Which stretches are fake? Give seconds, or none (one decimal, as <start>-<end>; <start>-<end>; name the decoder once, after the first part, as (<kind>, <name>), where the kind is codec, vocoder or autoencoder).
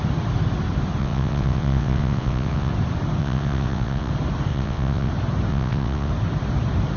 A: 1.0-2.7 (vocoder, WaveNeXt); 3.2-4.1; 4.5-5.1; 5.5-6.1